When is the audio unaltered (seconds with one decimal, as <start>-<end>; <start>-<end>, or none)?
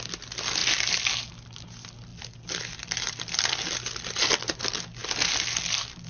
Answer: 0.0-2.1; 4.6-6.1